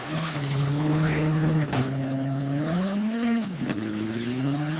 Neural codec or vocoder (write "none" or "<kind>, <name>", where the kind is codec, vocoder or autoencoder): codec, HILCodec